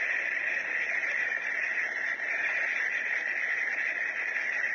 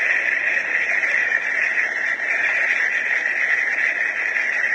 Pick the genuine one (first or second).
second